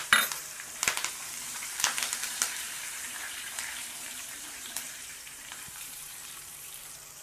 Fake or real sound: fake